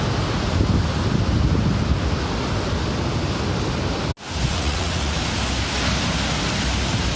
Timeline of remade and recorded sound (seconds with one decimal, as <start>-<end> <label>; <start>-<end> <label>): 0.0-4.5 recorded; 4.5-5.2 remade; 5.2-7.2 recorded